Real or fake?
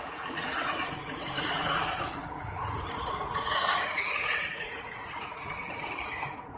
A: fake